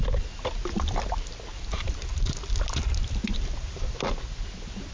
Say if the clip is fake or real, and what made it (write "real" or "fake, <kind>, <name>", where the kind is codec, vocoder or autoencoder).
real